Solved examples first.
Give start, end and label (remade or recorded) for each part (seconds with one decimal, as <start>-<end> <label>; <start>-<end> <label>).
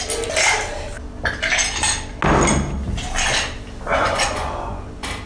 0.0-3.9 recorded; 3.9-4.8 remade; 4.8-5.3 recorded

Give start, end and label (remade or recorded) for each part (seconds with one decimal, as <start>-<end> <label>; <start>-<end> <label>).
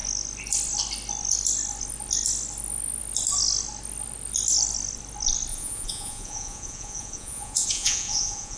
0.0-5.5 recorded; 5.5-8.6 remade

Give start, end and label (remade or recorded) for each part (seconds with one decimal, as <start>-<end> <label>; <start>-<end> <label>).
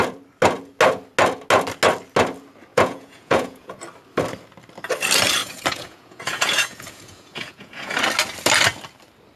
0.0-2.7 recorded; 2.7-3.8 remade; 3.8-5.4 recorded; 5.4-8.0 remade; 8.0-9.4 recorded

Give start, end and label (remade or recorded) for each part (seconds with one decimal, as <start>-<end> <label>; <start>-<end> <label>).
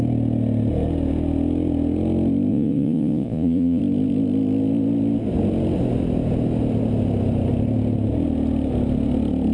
0.0-2.5 recorded; 2.5-3.8 remade; 3.8-9.5 recorded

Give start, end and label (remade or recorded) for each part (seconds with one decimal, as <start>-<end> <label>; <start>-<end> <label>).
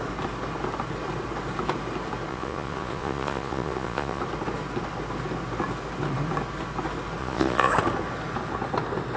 0.0-2.3 recorded; 2.3-4.2 remade; 4.2-7.2 recorded; 7.2-7.7 remade; 7.7-9.2 recorded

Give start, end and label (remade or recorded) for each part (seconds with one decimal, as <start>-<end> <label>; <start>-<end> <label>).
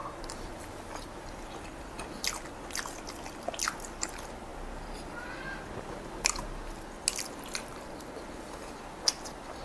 0.0-9.6 recorded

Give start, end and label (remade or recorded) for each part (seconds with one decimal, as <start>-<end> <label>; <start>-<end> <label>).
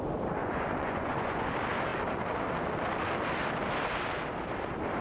0.0-0.4 recorded; 0.4-1.5 remade; 1.5-5.0 recorded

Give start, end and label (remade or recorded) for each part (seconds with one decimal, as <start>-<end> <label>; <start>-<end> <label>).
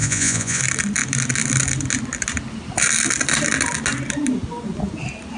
0.0-0.6 remade; 0.6-5.4 recorded